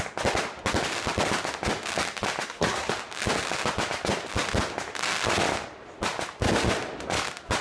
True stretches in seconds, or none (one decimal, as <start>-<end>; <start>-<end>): 0.0-2.4; 2.9-7.6